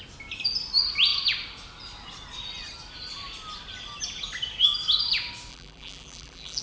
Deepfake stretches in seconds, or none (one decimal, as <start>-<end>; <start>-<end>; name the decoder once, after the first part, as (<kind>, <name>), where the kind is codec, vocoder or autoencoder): 5.5-6.6 (vocoder, BigVGAN v2)